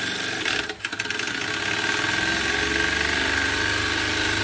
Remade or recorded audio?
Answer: recorded